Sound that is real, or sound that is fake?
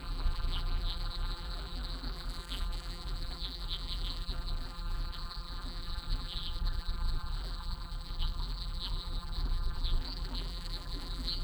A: fake